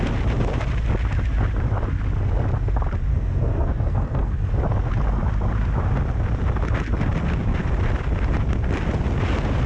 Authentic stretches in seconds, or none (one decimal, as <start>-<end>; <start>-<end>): 0.0-3.1; 4.5-9.7